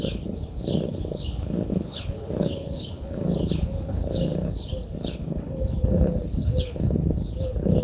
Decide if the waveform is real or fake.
fake